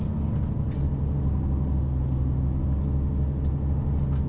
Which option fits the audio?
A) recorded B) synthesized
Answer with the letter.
A